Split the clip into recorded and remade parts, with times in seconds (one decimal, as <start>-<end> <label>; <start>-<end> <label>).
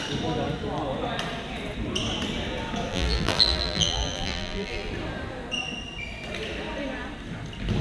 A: 0.0-2.9 recorded; 2.9-4.9 remade; 4.9-7.8 recorded